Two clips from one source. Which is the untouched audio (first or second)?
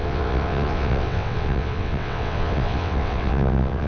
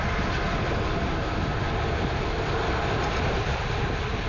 second